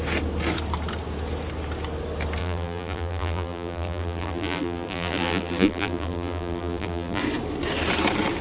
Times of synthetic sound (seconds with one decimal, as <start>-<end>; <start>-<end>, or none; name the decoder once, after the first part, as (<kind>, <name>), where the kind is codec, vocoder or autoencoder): 2.4-7.2 (vocoder, BigVGAN v2)